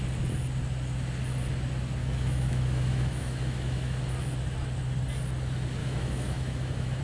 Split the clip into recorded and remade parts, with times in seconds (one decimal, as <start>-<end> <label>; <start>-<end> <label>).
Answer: 0.0-2.0 recorded; 2.0-4.0 remade; 4.0-5.8 recorded; 5.8-7.0 remade